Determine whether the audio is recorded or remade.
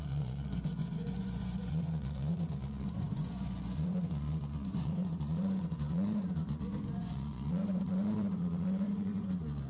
remade